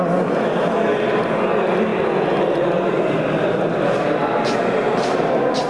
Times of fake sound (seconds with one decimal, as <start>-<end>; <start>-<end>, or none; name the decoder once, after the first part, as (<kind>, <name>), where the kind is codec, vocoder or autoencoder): none